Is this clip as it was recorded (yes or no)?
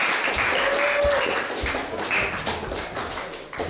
yes